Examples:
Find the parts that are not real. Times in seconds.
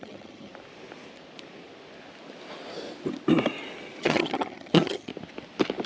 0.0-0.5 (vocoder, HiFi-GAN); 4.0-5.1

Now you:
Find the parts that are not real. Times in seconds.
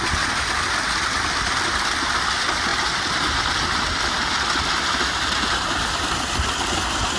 none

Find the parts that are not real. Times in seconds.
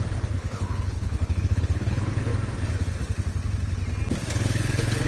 0.0-2.3 (codec, HILCodec); 4.3-5.1